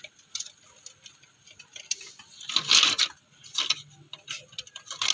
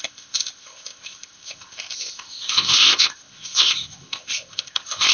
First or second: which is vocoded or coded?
second